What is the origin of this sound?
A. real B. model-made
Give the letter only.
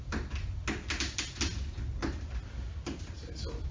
A